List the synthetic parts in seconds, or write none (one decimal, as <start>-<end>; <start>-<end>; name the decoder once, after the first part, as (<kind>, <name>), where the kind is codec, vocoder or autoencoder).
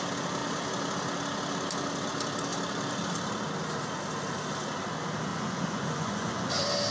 5.3-6.5 (vocoder, Vocos)